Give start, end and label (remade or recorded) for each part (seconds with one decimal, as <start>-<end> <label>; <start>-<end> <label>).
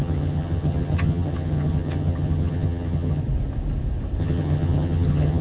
0.0-3.2 remade; 3.2-4.2 recorded; 4.2-5.4 remade